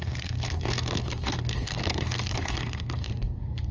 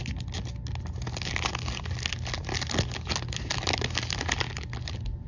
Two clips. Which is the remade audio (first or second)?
first